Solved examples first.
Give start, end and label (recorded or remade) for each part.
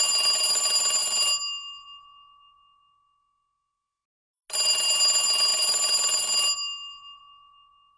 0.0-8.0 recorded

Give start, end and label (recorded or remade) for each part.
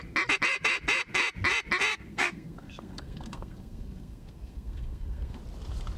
0.0-1.9 recorded; 1.9-5.4 remade; 5.4-6.0 recorded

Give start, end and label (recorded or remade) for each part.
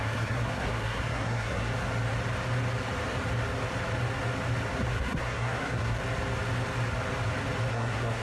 0.0-1.7 remade; 1.7-4.9 recorded; 4.9-6.0 remade; 6.0-7.7 recorded; 7.7-8.2 remade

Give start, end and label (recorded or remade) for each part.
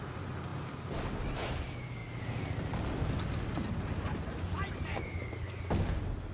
0.0-6.3 recorded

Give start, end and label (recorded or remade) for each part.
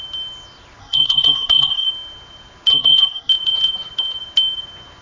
0.0-0.8 recorded; 0.8-1.9 remade; 1.9-2.7 recorded; 2.7-3.3 remade; 3.3-5.0 recorded